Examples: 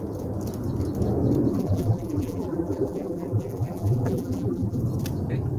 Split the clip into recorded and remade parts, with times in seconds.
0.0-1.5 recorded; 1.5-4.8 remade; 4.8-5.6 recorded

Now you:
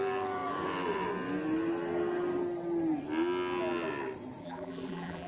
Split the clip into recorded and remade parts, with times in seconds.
0.0-4.4 recorded; 4.4-5.3 remade

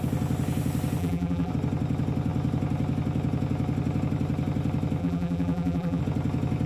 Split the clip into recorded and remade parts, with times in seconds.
0.0-1.0 recorded; 1.0-1.5 remade; 1.5-5.0 recorded; 5.0-6.0 remade; 6.0-6.7 recorded

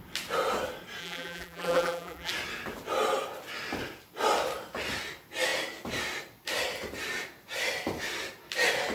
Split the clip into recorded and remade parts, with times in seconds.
0.0-1.0 recorded; 1.0-2.3 remade; 2.3-8.9 recorded

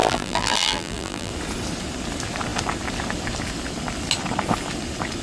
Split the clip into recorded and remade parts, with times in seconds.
0.0-1.3 remade; 1.3-5.2 recorded

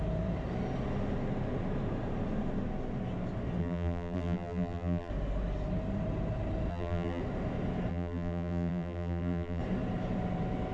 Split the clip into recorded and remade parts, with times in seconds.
0.0-3.6 recorded; 3.6-5.1 remade; 5.1-6.7 recorded; 6.7-7.2 remade; 7.2-7.9 recorded; 7.9-9.6 remade; 9.6-10.7 recorded

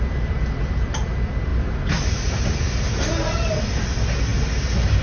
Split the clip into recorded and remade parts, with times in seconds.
0.0-5.0 recorded